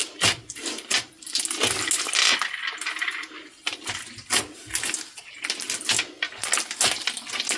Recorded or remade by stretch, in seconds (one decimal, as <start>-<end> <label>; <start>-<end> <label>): 0.0-1.9 remade; 1.9-7.6 recorded